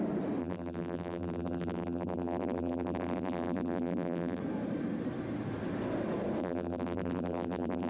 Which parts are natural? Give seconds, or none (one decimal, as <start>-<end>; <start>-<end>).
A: 0.0-0.4; 4.4-6.4